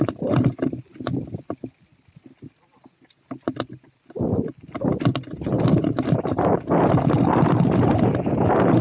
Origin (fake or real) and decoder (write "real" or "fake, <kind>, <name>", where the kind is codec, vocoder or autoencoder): real